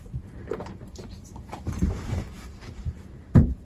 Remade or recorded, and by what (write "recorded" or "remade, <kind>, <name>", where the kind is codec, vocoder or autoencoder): remade, vocoder, BigVGAN v2